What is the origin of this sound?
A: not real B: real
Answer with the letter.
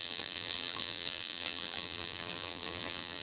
A